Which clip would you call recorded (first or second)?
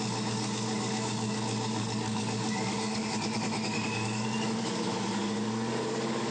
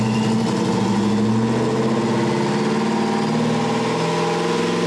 second